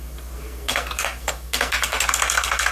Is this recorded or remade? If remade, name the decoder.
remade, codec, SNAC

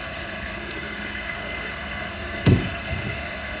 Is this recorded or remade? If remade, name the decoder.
remade, codec, SNAC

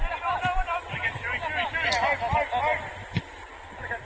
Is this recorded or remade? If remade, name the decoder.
recorded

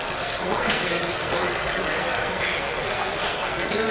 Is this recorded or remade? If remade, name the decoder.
remade, codec, SNAC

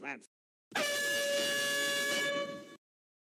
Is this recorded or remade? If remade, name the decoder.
recorded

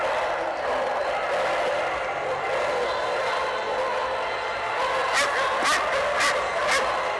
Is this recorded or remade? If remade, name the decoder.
recorded